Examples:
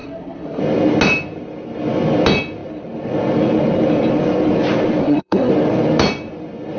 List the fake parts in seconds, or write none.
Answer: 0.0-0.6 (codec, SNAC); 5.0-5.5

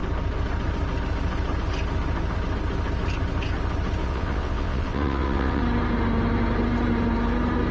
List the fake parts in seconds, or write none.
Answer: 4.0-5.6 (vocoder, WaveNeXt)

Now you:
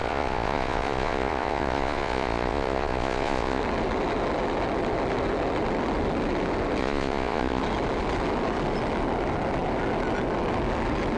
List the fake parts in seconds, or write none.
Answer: 0.0-3.6 (vocoder, Vocos); 6.8-7.6

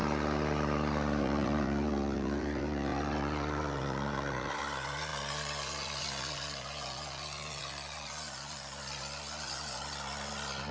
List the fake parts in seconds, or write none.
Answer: 1.2-10.7 (vocoder, Vocos)

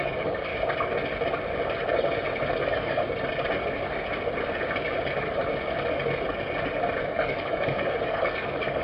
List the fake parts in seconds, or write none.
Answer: 0.0-0.5 (codec, DAC); 2.5-3.0; 7.0-8.8

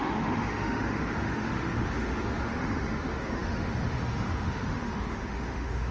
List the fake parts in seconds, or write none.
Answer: 0.0-5.9 (autoencoder, DAC-VAE)

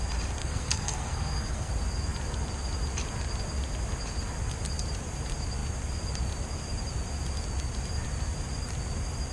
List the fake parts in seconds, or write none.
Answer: 0.4-1.7 (codec, SNAC)

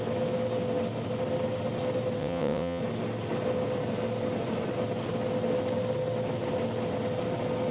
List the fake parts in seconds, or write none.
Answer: 2.2-2.8 (vocoder, WaveNeXt)